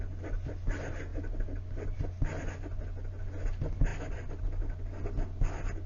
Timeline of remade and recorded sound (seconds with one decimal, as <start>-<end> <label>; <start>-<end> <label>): 0.0-3.9 recorded; 3.9-4.4 remade; 4.4-5.9 recorded